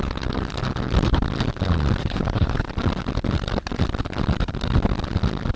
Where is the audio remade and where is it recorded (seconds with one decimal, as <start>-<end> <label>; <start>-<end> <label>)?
0.0-2.0 recorded; 2.0-2.7 remade; 2.7-5.6 recorded